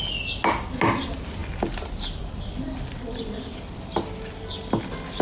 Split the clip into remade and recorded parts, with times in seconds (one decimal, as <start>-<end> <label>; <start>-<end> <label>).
0.0-5.2 recorded